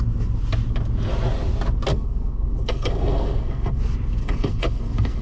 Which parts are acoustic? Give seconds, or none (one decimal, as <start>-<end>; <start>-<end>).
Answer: 0.0-1.9; 3.8-4.2